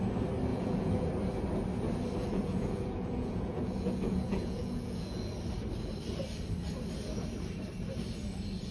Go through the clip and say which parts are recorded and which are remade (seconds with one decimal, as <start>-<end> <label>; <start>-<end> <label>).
0.0-0.5 recorded; 0.5-1.1 remade; 1.1-2.2 recorded; 2.2-5.3 remade; 5.3-8.7 recorded